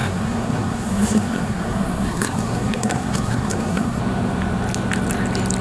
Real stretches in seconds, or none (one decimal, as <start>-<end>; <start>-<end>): 4.0-5.6

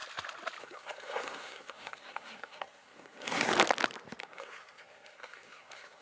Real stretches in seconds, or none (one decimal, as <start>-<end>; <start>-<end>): 0.0-0.6; 3.5-4.2

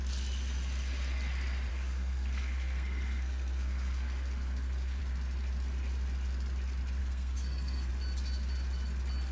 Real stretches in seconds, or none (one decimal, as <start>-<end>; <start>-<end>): 0.0-1.7; 5.0-7.0; 7.9-9.3